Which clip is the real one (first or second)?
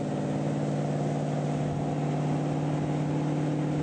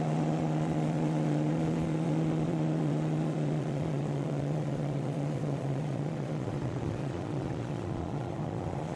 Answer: first